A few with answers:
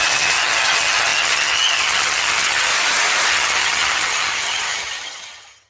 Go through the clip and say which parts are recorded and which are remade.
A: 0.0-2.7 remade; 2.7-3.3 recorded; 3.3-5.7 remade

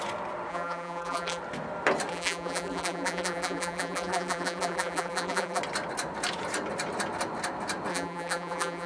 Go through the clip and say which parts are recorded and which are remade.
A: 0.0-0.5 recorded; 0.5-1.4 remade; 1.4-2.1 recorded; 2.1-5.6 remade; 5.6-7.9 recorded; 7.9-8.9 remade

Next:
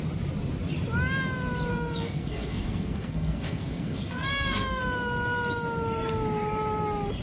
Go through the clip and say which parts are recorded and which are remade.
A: 0.0-1.7 recorded; 1.7-4.8 remade; 4.8-7.2 recorded